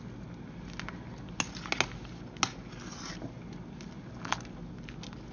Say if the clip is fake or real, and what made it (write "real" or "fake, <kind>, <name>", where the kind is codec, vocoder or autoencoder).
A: real